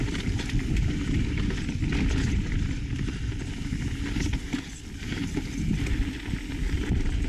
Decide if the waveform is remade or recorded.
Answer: recorded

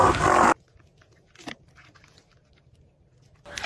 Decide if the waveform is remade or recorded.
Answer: recorded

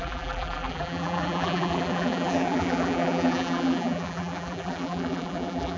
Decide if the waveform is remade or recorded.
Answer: remade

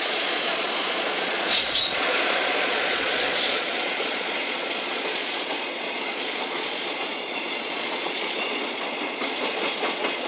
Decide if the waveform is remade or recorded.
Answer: remade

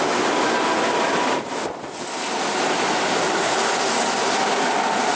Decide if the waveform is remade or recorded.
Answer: recorded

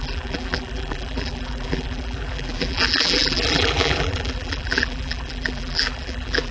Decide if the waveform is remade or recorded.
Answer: remade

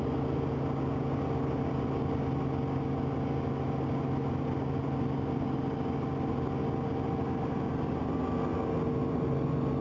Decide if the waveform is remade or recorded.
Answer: recorded